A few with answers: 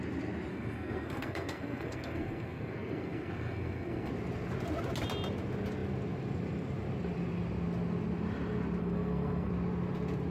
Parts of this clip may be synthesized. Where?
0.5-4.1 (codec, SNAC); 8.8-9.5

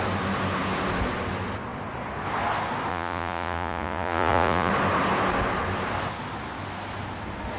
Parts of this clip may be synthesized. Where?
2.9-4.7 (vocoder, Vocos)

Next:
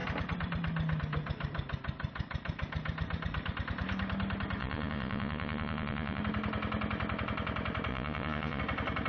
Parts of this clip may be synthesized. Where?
4.6-6.2 (vocoder, Vocos); 7.9-8.6